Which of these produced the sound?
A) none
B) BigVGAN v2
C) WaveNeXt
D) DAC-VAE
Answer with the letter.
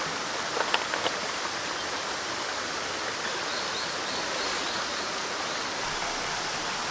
A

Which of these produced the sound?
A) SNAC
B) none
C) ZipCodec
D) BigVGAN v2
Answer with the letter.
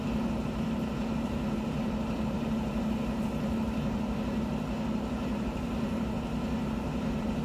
D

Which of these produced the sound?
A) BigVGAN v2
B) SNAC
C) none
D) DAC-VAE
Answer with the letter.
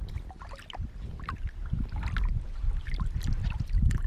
C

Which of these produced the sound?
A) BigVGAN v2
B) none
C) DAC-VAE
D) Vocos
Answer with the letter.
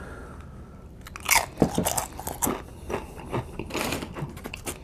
B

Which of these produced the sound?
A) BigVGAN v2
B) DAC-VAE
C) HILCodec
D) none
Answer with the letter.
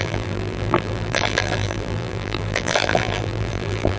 A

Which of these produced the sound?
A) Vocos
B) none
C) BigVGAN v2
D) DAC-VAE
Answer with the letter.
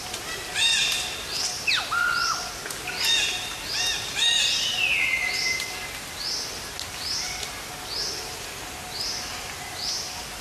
B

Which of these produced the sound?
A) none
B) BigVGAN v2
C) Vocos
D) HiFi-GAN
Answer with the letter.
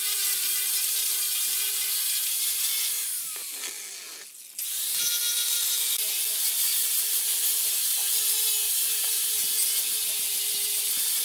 A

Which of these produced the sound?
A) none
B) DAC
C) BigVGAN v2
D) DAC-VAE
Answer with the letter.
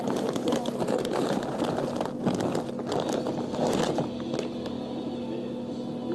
A